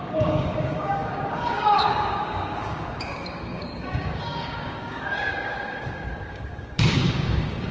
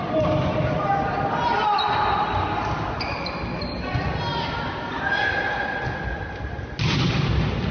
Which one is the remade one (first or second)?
first